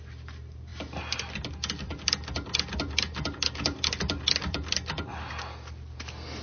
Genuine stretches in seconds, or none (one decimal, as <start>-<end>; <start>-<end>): 0.0-6.4